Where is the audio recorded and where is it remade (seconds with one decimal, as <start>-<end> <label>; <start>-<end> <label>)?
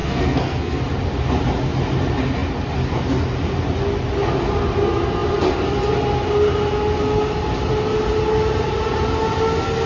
0.0-0.8 remade; 0.8-9.9 recorded